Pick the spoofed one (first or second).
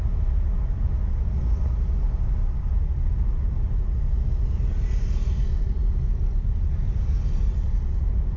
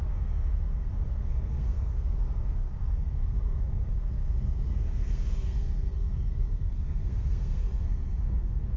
second